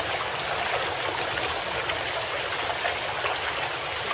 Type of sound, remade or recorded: recorded